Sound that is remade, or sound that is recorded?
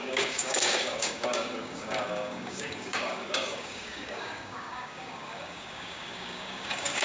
remade